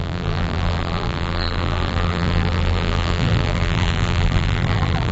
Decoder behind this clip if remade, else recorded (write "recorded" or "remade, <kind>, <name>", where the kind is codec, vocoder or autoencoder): remade, vocoder, BigVGAN v2